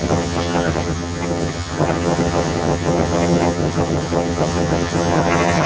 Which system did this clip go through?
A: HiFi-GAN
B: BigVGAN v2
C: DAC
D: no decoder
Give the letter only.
A